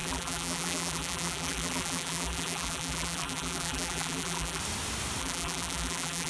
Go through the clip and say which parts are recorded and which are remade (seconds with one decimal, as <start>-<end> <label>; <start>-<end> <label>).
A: 0.0-4.6 remade; 4.6-5.2 recorded; 5.2-6.3 remade